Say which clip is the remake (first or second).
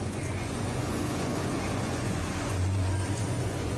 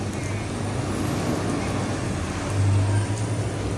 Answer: first